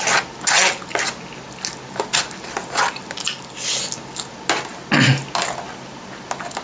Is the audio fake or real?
real